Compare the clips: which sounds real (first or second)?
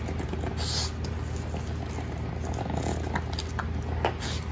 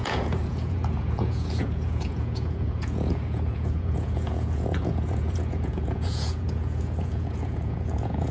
first